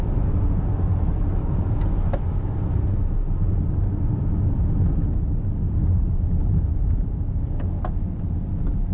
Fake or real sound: real